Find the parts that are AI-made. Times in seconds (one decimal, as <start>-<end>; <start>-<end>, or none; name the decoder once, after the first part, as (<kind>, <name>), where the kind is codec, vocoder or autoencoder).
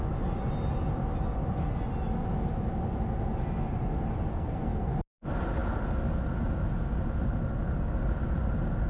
4.3-4.9 (codec, SNAC)